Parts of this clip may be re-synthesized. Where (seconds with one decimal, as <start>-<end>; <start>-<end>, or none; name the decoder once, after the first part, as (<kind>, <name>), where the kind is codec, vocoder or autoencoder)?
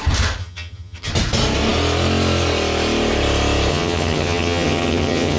0.4-1.1 (vocoder, HiFi-GAN); 3.7-5.4